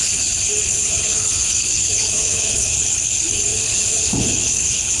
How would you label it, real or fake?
fake